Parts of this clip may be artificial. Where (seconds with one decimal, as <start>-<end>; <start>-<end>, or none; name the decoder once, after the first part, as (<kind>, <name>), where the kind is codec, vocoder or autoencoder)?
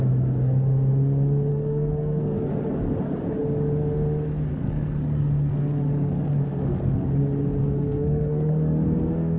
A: 1.5-2.5 (codec, SNAC); 4.5-7.1; 7.6-9.4